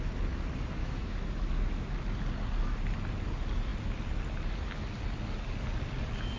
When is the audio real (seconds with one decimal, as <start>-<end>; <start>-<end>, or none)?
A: 0.0-0.8; 1.3-6.4